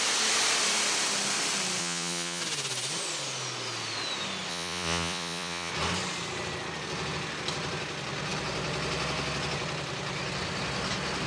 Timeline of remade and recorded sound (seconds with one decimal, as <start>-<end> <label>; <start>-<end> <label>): 0.0-1.8 recorded; 1.8-2.4 remade; 2.4-4.5 recorded; 4.5-5.7 remade; 5.7-11.3 recorded